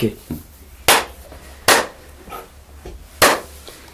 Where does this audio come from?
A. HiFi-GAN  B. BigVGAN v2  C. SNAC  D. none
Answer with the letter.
D